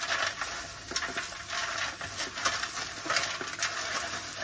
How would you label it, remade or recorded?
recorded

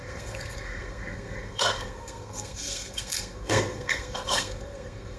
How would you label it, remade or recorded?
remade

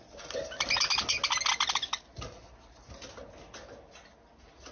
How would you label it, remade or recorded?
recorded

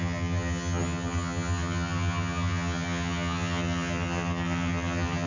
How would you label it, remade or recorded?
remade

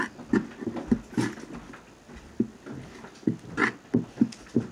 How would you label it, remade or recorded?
recorded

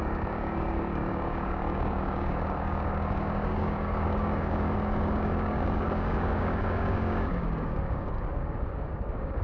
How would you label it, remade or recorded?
remade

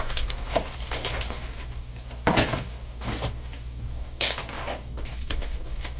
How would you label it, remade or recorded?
remade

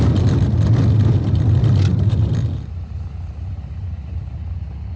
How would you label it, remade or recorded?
remade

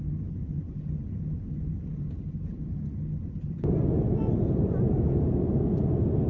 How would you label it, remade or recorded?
recorded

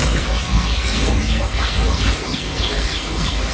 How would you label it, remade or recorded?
remade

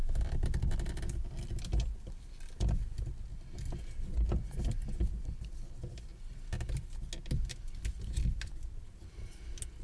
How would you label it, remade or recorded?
recorded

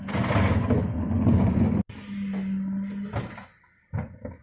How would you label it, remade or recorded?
recorded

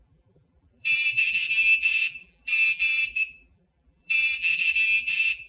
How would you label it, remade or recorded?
remade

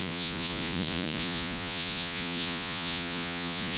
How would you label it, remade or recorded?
remade